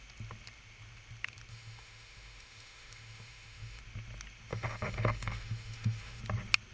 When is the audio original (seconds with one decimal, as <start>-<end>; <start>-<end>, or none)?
0.0-1.5; 3.8-4.5; 6.2-6.7